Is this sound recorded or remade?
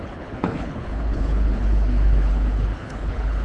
remade